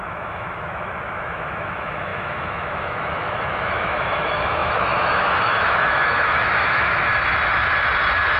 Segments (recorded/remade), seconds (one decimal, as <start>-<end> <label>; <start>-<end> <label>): 0.0-7.1 remade; 7.1-8.4 recorded